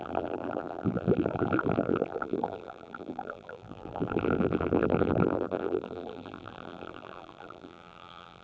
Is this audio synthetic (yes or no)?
yes